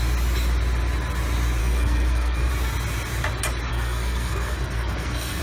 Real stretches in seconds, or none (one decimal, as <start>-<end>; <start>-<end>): 0.0-1.6; 2.5-3.7